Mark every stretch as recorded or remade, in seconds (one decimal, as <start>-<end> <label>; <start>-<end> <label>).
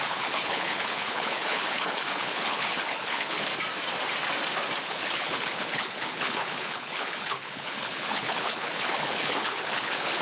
0.0-3.5 remade; 3.5-4.8 recorded; 4.8-10.2 remade